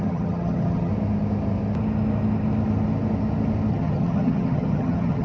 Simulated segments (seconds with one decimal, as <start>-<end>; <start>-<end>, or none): 0.0-0.9; 3.7-5.2

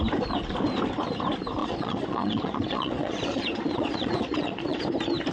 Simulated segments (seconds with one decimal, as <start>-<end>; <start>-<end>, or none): 1.6-4.8

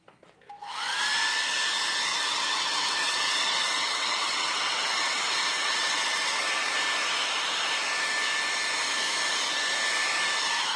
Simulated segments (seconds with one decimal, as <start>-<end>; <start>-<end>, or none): 2.1-6.7

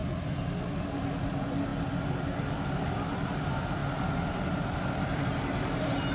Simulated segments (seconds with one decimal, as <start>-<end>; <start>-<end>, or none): none

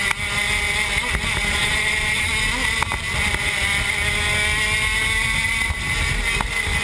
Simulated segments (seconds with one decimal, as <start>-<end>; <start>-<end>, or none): 1.5-2.3